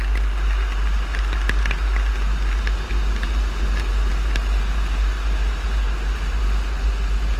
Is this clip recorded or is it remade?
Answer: recorded